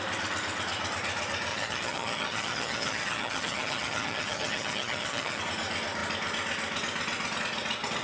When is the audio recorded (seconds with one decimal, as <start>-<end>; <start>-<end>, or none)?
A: 0.0-1.5; 5.4-8.0